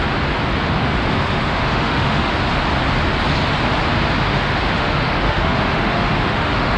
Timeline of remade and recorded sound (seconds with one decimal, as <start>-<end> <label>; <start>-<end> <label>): 0.0-0.8 recorded; 0.8-2.3 remade; 2.3-4.3 recorded; 4.3-6.8 remade